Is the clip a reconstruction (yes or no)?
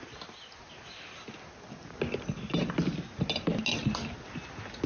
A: no